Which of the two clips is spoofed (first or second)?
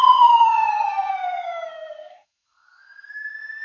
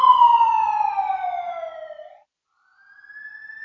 first